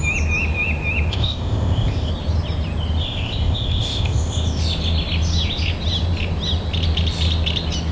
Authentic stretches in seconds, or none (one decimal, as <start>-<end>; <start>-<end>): 0.0-1.1; 2.1-3.0; 4.6-7.9